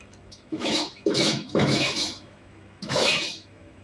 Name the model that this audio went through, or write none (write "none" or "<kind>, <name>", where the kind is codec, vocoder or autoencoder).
autoencoder, DAC-VAE